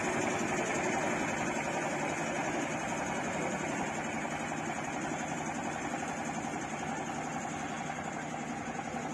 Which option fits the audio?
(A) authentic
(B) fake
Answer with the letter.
A